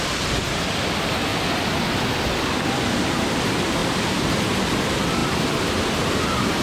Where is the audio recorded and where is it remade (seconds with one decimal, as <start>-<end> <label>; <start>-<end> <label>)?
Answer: 0.0-3.8 recorded; 3.8-4.5 remade; 4.5-6.6 recorded